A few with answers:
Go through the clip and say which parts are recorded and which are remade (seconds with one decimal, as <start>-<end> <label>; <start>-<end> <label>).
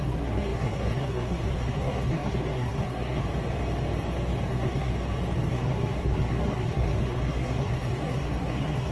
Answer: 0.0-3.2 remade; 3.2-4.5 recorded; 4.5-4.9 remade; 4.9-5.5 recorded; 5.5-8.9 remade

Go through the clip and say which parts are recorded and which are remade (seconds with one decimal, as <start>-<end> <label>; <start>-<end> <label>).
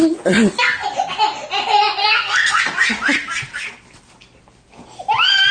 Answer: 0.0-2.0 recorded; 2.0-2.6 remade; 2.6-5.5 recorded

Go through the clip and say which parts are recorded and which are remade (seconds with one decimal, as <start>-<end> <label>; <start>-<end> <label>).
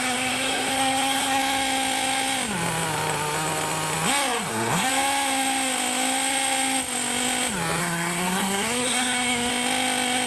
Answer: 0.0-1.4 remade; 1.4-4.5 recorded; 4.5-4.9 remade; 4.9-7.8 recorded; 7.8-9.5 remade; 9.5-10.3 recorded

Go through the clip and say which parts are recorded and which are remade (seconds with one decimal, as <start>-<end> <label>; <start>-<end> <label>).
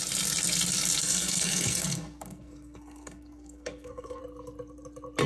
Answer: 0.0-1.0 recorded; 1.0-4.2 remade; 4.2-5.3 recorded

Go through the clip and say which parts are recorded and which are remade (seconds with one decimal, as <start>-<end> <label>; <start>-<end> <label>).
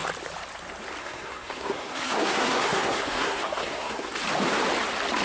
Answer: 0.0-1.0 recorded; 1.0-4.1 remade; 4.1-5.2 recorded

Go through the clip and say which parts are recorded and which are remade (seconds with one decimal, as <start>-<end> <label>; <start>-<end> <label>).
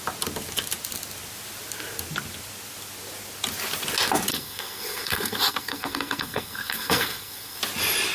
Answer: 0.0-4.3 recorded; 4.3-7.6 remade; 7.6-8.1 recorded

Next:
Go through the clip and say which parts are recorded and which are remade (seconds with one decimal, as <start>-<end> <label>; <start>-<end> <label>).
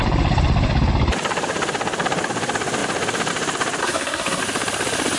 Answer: 0.0-3.8 recorded; 3.8-4.4 remade; 4.4-5.2 recorded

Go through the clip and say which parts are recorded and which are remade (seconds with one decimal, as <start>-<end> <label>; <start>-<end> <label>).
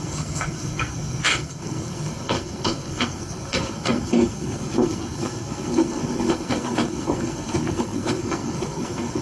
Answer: 0.0-9.2 remade